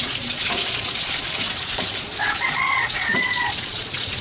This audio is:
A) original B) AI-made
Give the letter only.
B